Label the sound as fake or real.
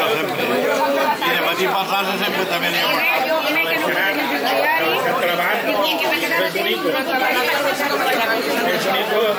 fake